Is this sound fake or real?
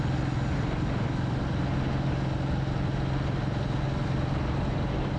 real